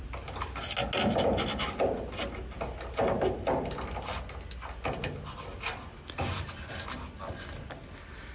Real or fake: real